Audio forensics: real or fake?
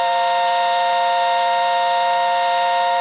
real